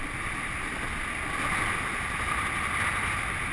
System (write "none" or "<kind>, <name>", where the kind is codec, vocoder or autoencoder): none